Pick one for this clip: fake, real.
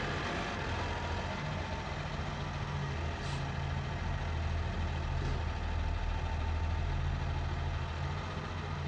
real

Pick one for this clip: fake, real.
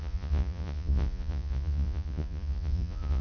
fake